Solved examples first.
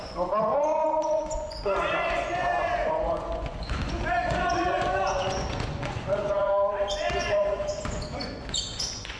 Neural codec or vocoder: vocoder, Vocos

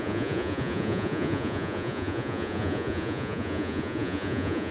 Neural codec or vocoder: vocoder, Vocos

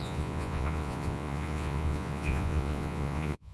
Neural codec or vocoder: vocoder, Vocos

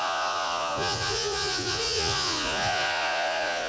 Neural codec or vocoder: vocoder, Vocos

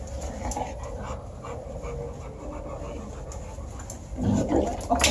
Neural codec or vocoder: none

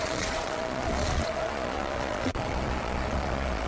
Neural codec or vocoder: vocoder, Vocos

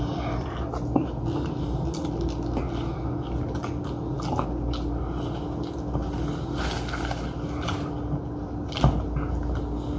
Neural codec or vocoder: none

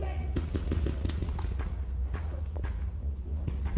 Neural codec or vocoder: vocoder, Vocos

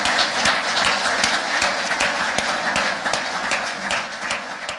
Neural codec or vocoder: vocoder, Vocos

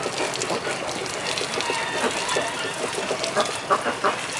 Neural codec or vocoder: none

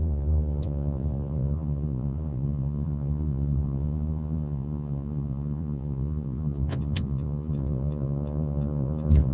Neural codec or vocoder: vocoder, Vocos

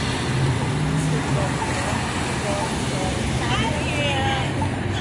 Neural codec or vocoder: none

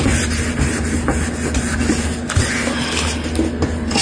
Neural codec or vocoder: none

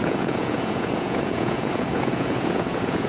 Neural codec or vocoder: vocoder, Vocos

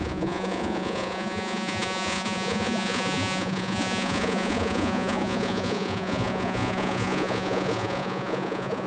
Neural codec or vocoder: vocoder, Vocos